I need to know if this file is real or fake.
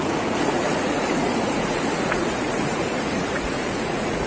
fake